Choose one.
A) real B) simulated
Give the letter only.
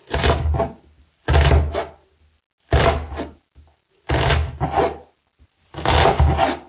A